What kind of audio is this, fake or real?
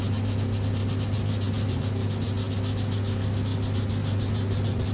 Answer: real